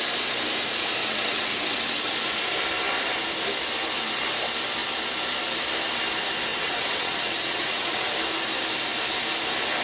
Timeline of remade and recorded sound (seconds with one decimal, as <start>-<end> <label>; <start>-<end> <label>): 0.0-1.0 recorded; 1.0-2.1 remade; 2.1-6.5 recorded; 6.5-8.0 remade; 8.0-9.8 recorded